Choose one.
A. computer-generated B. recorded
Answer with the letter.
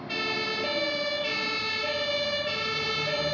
B